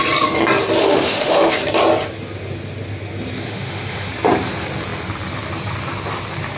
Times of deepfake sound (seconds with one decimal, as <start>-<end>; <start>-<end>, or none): 0.8-1.5; 3.4-4.1